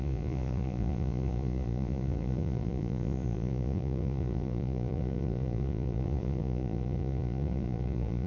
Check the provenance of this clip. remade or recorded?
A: remade